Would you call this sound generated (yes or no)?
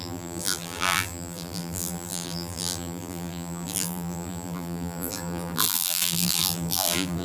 yes